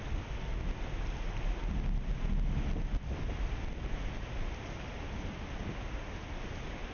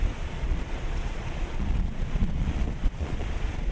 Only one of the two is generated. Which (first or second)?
second